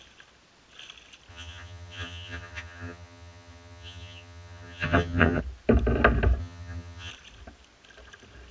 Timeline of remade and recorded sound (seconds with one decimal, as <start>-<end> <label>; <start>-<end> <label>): 0.0-1.3 recorded; 1.3-5.4 remade; 5.4-6.4 recorded; 6.4-7.1 remade; 7.1-8.5 recorded